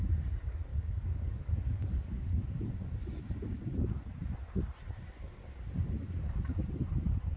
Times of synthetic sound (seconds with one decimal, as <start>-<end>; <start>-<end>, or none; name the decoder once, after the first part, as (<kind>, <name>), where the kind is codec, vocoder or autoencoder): 0.7-2.7 (codec, DAC)